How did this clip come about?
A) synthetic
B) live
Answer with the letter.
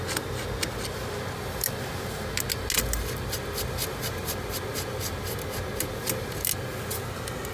B